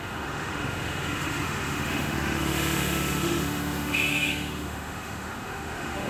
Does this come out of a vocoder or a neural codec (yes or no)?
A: yes